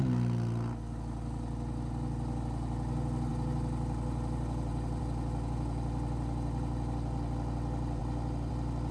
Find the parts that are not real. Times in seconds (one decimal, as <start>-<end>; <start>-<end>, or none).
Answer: none